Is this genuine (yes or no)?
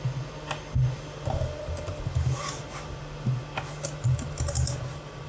yes